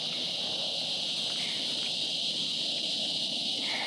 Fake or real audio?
real